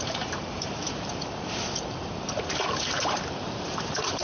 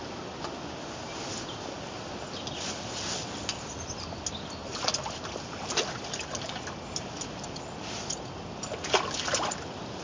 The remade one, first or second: first